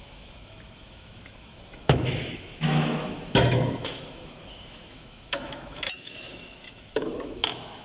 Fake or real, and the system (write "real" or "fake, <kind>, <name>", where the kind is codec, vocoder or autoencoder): fake, autoencoder, DAC-VAE